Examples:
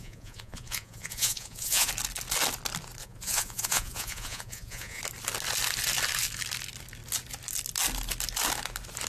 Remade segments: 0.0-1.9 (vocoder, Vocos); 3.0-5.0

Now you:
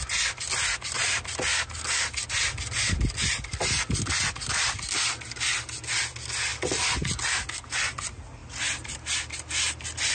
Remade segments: none

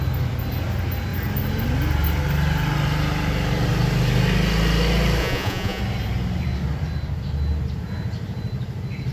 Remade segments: 5.2-5.8 (vocoder, Vocos)

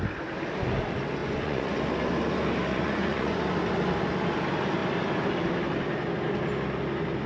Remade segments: 1.2-1.8 (vocoder, Vocos); 2.7-3.4

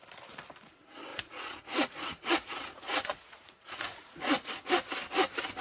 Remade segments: 1.1-4.5 (vocoder, Vocos)

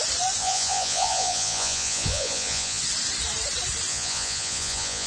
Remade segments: 0.4-2.8 (vocoder, Vocos); 3.9-5.1

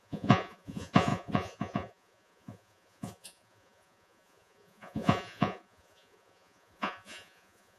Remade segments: 0.0-7.8 (vocoder, Vocos)

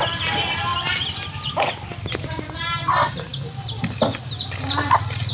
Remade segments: none